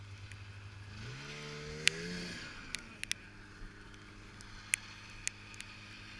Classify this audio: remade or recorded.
recorded